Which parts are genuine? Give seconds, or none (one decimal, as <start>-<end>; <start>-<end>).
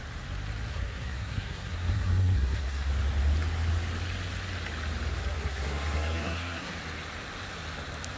0.0-0.7; 2.9-5.2; 6.7-8.2